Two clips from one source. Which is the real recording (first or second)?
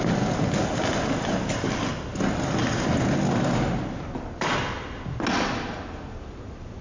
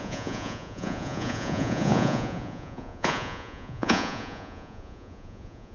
first